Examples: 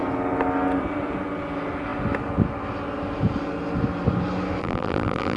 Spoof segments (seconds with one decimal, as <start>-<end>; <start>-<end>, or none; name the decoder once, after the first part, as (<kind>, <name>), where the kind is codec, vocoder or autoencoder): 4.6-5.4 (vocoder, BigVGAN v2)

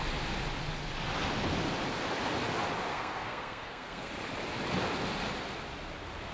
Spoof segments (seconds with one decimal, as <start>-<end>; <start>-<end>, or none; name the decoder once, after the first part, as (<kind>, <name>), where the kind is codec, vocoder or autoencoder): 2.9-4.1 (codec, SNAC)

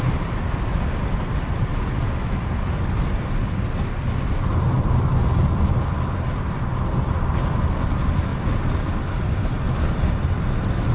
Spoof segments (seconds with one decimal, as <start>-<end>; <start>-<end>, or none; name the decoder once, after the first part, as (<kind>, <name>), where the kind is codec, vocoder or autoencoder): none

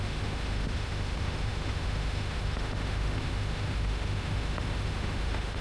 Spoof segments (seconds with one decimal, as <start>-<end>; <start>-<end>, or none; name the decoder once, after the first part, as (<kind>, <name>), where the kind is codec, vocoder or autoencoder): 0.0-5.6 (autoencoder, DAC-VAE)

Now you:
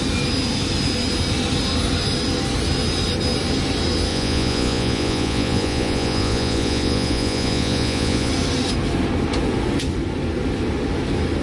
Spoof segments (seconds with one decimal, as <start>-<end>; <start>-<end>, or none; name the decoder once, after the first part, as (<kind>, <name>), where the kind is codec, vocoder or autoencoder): 4.1-8.3 (vocoder, Vocos)

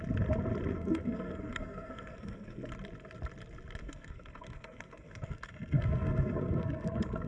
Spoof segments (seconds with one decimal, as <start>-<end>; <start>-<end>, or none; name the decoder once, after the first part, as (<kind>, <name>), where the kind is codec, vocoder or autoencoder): 0.7-2.7 (codec, SNAC); 3.8-7.3